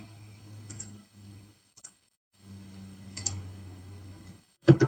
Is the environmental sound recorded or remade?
remade